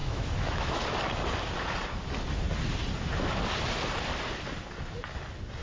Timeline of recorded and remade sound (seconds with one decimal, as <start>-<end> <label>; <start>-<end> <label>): 0.0-0.8 remade; 0.8-5.6 recorded